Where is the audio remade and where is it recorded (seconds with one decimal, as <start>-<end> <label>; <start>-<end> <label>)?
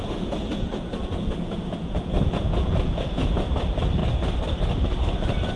0.0-3.4 remade; 3.4-5.6 recorded